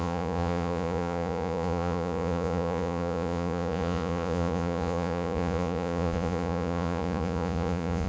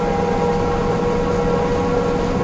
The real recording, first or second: second